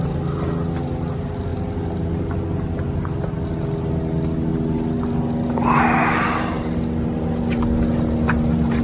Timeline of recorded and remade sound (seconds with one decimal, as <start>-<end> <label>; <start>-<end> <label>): 0.0-8.8 recorded